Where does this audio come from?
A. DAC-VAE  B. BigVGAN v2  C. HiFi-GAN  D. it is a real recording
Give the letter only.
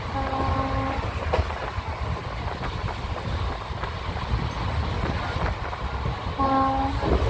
D